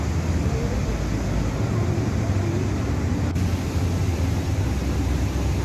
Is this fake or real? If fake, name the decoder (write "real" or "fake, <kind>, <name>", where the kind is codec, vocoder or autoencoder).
real